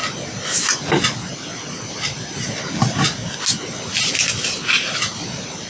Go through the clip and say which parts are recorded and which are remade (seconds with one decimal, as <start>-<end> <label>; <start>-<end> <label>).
0.0-5.7 recorded